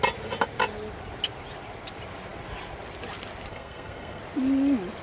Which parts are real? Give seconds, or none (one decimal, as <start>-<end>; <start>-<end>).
0.0-3.5; 4.2-5.0